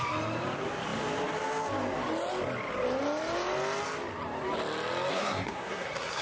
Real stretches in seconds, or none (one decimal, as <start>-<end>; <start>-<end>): 0.0-5.1